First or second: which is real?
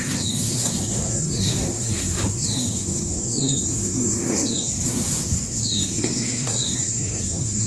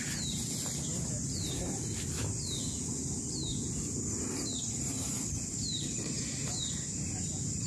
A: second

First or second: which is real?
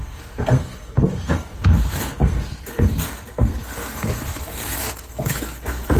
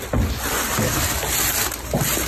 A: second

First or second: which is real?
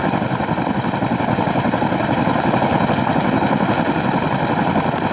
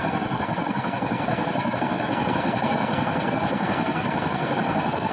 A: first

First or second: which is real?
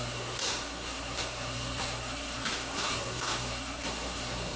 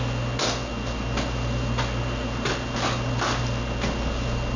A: second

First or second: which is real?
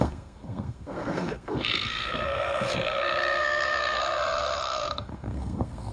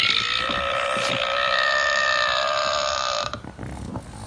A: second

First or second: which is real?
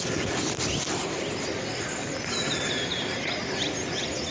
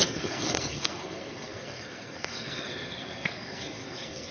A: first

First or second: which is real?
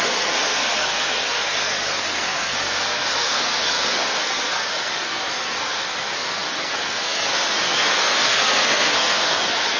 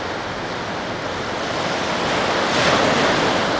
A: second